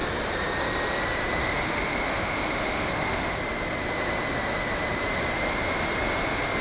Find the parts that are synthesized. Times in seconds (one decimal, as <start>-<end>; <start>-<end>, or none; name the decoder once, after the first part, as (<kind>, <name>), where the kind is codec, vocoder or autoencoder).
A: 1.4-3.4 (autoencoder, DAC-VAE)